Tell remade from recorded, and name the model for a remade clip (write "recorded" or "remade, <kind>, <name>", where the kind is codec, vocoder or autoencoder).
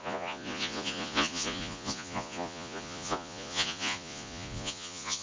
remade, vocoder, Vocos